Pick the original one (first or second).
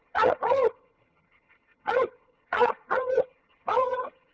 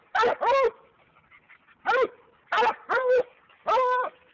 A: second